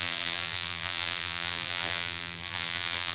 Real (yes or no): no